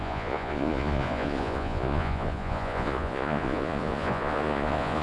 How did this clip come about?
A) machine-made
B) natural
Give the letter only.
A